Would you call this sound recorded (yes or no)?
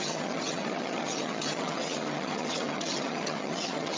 no